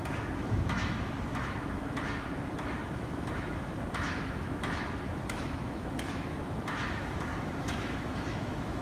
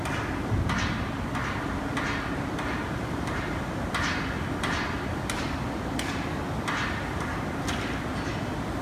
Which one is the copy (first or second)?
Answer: first